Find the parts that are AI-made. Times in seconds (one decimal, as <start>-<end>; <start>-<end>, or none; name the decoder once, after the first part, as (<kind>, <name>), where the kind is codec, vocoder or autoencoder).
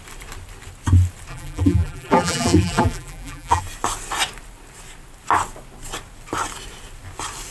1.3-3.6 (vocoder, BigVGAN v2)